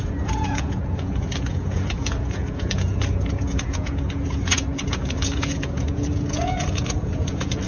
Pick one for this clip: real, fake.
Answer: fake